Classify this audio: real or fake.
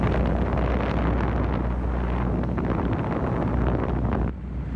real